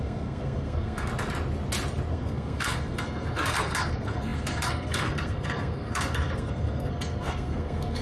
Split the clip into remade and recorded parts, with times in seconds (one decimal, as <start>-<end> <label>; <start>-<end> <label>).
0.0-1.1 remade; 1.1-2.1 recorded; 2.1-8.0 remade